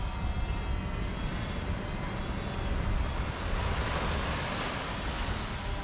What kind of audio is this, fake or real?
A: real